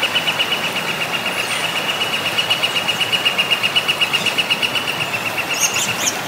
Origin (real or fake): real